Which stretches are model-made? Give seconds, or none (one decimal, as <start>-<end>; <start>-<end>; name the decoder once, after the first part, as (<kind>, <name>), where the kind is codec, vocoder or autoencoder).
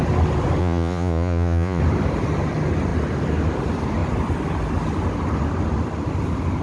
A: 0.6-1.8 (vocoder, Vocos)